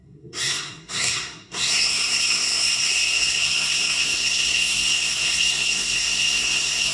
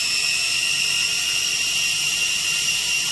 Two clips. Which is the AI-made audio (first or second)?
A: first